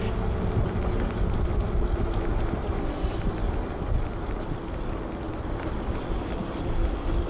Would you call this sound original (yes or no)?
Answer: yes